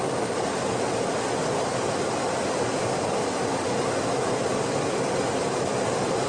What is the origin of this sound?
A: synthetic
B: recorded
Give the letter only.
B